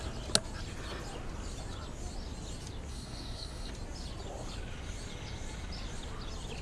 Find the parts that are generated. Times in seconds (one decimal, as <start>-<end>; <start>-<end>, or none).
2.9-3.7